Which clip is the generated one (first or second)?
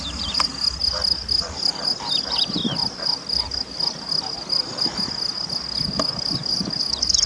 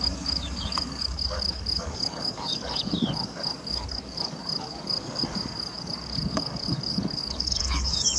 second